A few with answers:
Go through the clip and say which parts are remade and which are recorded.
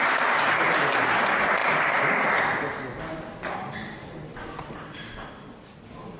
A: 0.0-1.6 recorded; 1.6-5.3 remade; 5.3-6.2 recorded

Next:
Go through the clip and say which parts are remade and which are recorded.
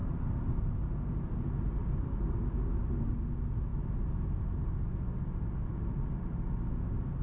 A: 0.0-0.7 remade; 0.7-1.8 recorded; 1.8-2.4 remade; 2.4-7.2 recorded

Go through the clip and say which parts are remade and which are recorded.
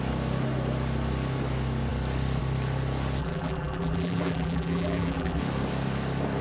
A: 0.0-3.2 recorded; 3.2-5.4 remade; 5.4-6.4 recorded